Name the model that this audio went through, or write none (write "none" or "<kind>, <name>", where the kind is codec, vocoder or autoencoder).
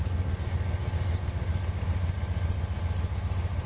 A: vocoder, BigVGAN v2